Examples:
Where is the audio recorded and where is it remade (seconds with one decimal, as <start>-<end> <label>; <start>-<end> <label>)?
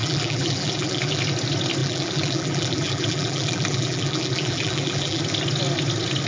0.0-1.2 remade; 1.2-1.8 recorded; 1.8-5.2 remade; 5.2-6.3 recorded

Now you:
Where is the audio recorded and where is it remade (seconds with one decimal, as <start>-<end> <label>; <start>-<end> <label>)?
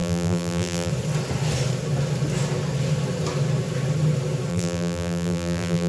0.0-0.9 remade; 0.9-4.5 recorded; 4.5-5.9 remade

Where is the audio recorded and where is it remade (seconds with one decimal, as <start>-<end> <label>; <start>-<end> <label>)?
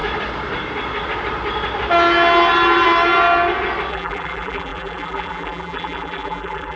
0.0-3.9 recorded; 3.9-6.8 remade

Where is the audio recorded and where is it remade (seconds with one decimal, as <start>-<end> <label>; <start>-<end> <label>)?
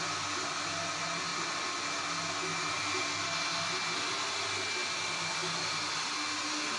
0.0-2.5 recorded; 2.5-3.0 remade; 3.0-6.8 recorded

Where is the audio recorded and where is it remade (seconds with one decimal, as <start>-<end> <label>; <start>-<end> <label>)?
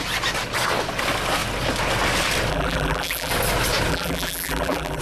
0.0-2.5 recorded; 2.5-3.3 remade; 3.3-3.9 recorded; 3.9-5.0 remade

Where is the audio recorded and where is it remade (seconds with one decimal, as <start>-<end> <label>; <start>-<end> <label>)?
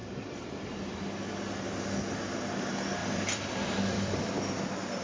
0.0-0.7 remade; 0.7-3.0 recorded; 3.0-4.3 remade; 4.3-5.0 recorded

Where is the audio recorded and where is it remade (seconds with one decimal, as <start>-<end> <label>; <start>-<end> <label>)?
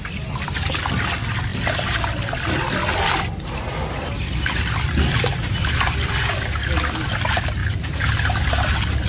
0.0-9.1 recorded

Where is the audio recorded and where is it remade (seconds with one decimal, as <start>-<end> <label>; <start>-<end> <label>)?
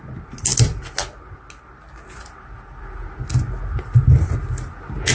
0.0-5.1 recorded